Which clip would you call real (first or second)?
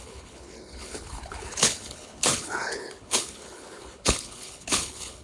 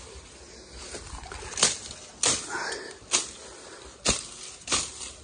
second